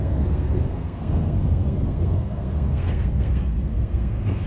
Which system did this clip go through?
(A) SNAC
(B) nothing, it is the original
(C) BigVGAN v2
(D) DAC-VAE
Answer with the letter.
A